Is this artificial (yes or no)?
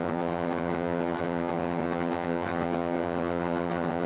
yes